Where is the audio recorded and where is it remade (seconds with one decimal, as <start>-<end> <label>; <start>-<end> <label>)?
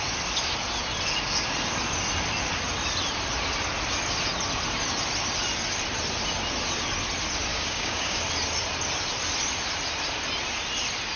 0.0-7.5 recorded; 7.5-8.2 remade; 8.2-11.2 recorded